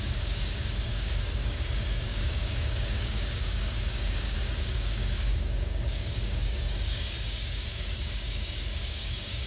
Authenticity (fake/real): fake